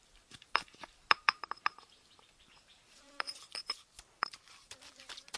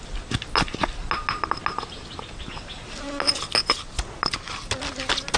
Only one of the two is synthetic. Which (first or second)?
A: first